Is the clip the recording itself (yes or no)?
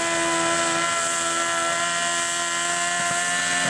yes